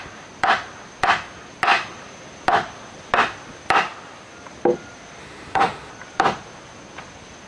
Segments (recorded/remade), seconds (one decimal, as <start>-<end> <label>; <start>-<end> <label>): 0.0-5.2 recorded; 5.2-5.9 remade; 5.9-7.5 recorded